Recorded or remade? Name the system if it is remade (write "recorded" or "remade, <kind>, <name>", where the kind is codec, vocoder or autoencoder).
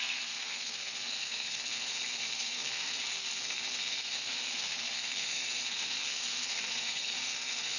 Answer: remade, codec, SNAC